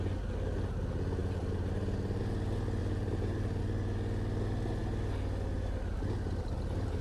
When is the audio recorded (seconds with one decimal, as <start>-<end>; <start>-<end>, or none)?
0.0-1.2; 2.2-2.8; 3.6-7.0